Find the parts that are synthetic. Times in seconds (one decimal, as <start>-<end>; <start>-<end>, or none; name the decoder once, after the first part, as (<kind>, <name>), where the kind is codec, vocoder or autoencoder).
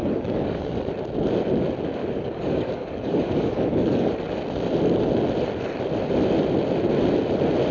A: 0.0-0.8 (codec, DAC); 2.0-4.1